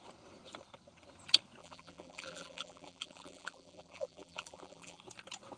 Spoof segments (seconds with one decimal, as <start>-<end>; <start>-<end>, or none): 1.6-5.0